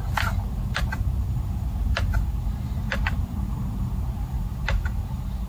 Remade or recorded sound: recorded